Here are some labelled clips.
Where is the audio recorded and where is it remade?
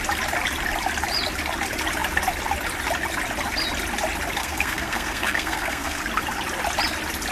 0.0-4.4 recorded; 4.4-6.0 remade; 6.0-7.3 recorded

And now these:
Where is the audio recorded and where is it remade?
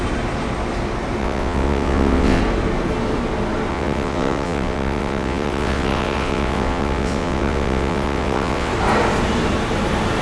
0.0-1.2 recorded; 1.2-2.4 remade; 2.4-3.7 recorded; 3.7-8.7 remade; 8.7-10.2 recorded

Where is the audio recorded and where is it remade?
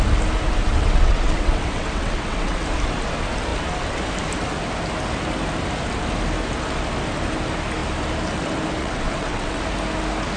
0.0-0.7 recorded; 0.7-2.6 remade; 2.6-8.8 recorded; 8.8-9.6 remade; 9.6-10.4 recorded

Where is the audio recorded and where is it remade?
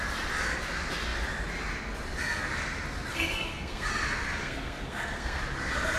0.0-3.1 recorded; 3.1-3.9 remade; 3.9-4.4 recorded; 4.4-5.4 remade; 5.4-6.0 recorded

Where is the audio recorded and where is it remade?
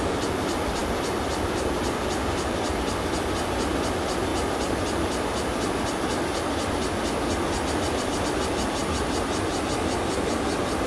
0.0-10.9 recorded